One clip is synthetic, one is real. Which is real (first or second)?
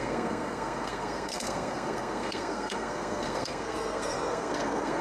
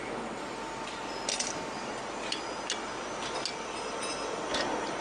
second